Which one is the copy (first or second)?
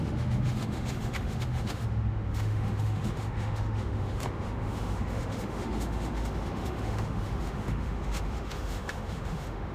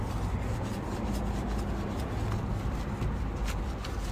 first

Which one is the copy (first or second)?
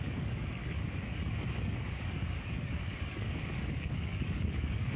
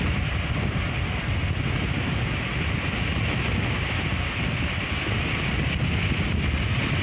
first